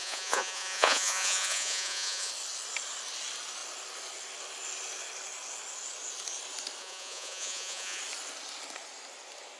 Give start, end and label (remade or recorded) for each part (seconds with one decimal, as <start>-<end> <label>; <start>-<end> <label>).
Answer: 0.0-2.3 remade; 2.3-6.8 recorded; 6.8-8.0 remade; 8.0-9.6 recorded